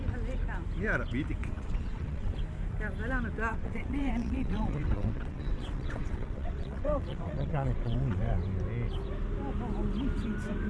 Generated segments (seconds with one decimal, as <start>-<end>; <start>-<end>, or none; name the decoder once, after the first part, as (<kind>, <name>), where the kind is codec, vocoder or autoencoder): 1.4-2.4 (vocoder, WaveNeXt); 3.5-8.3

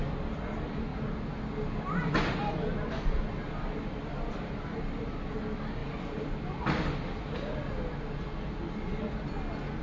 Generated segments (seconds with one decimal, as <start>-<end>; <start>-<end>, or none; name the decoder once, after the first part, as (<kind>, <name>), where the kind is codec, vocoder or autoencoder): none

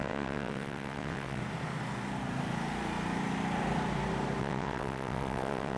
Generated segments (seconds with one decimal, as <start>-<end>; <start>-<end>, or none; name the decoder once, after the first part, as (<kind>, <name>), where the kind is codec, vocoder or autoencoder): 0.0-1.4 (vocoder, WaveNeXt); 4.4-5.8

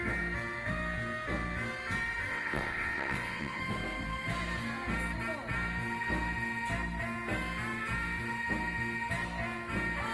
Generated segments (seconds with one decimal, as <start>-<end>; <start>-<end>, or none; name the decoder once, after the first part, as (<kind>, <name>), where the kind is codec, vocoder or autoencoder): 2.3-3.6 (vocoder, WaveNeXt)

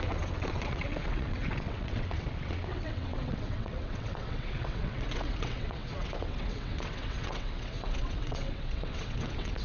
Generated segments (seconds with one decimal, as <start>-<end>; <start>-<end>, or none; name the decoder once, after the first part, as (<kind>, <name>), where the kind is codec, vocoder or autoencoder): 0.0-9.6 (vocoder, WaveNeXt)